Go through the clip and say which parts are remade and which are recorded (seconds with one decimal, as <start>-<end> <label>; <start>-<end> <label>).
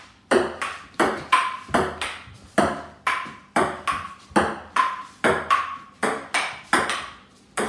0.0-7.7 recorded